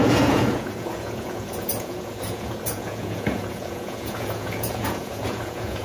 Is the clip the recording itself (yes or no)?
no